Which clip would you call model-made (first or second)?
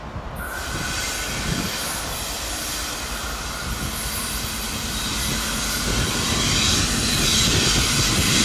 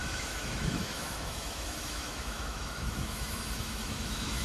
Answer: second